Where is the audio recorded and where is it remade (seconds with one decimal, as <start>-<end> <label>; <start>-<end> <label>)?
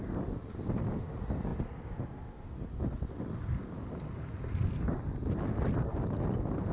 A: 0.0-6.7 recorded